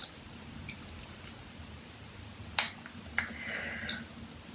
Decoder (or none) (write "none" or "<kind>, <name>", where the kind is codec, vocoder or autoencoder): none